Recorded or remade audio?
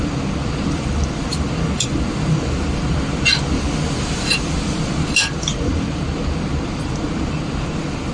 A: remade